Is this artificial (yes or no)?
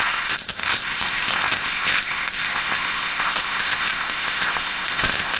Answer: yes